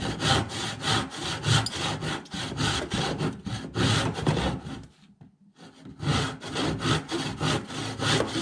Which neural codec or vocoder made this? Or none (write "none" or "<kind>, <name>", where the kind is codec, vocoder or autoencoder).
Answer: none